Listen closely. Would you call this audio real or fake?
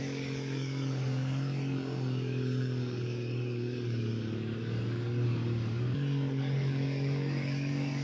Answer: fake